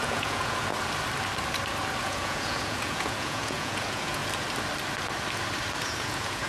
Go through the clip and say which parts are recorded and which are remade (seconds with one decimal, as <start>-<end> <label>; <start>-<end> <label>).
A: 0.0-0.7 remade; 0.7-2.0 recorded; 2.0-4.2 remade; 4.2-5.8 recorded; 5.8-6.5 remade